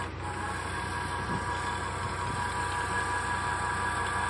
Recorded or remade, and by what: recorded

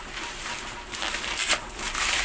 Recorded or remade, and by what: remade, vocoder, BigVGAN v2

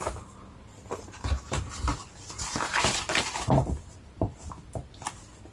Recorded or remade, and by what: remade, vocoder, BigVGAN v2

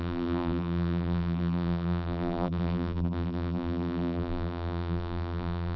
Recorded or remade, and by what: remade, vocoder, BigVGAN v2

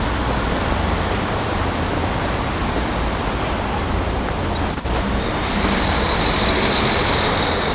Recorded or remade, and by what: recorded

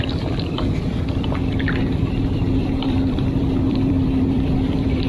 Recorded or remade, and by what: remade, vocoder, BigVGAN v2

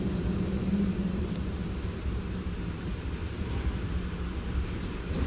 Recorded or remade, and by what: remade, vocoder, BigVGAN v2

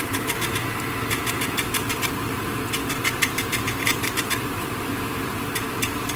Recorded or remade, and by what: remade, vocoder, BigVGAN v2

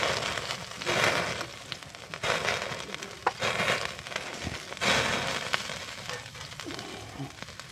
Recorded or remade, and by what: recorded